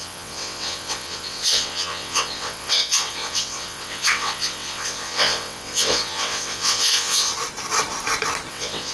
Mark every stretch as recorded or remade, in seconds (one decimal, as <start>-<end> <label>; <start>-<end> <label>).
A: 0.0-7.3 remade; 7.3-8.5 recorded; 8.5-8.9 remade